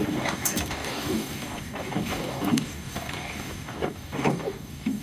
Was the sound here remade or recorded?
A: remade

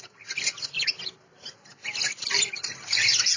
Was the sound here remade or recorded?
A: recorded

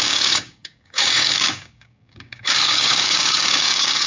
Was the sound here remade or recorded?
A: remade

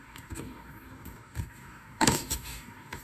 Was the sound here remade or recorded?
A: remade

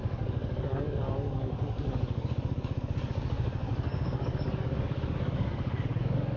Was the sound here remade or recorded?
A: remade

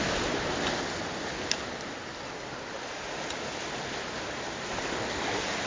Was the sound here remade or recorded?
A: recorded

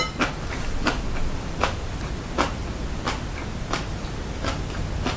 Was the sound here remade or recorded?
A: recorded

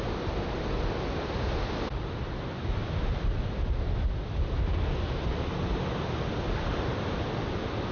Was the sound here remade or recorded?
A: recorded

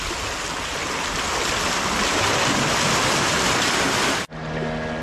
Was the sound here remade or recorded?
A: recorded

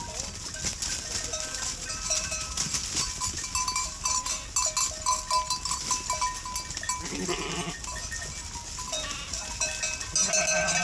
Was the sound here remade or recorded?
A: recorded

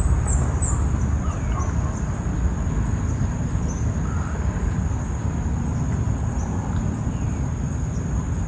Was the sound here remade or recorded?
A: recorded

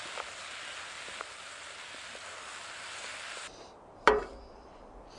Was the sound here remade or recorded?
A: recorded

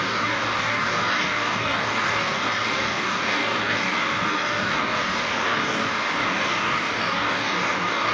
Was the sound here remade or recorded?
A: remade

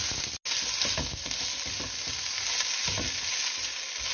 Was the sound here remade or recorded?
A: recorded